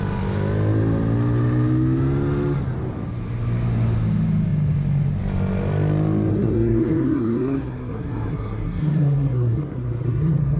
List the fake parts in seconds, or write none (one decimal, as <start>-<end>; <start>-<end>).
6.3-10.6